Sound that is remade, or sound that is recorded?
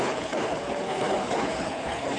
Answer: remade